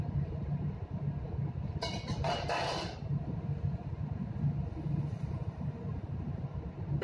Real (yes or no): yes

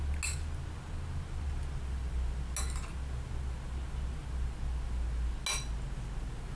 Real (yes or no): yes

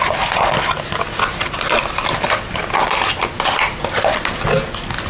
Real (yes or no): yes